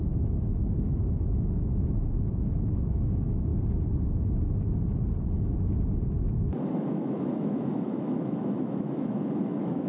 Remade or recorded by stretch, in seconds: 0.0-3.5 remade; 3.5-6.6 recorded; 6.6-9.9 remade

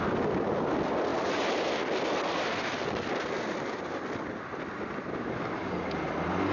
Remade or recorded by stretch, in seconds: 0.0-6.5 recorded

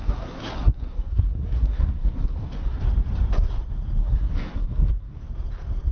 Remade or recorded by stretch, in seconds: 0.0-2.8 remade; 2.8-4.0 recorded; 4.0-5.2 remade; 5.2-5.9 recorded

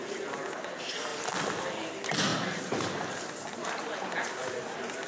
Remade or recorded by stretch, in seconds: 0.0-1.1 remade; 1.1-1.6 recorded; 1.6-5.1 remade

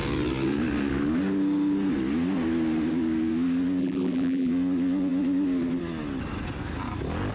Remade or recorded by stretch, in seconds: 0.0-3.8 recorded; 3.8-4.5 remade; 4.5-7.3 recorded

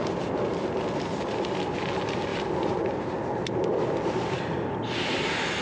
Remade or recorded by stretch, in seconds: 0.0-5.6 recorded